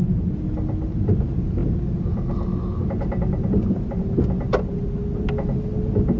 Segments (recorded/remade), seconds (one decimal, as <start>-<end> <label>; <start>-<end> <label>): 0.0-6.2 recorded